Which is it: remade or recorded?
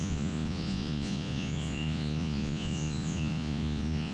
remade